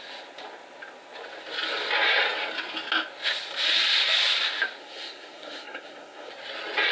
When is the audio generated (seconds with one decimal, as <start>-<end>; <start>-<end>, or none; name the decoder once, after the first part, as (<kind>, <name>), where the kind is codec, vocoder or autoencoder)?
4.8-6.3 (codec, SNAC)